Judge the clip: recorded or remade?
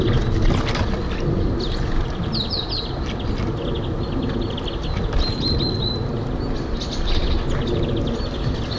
recorded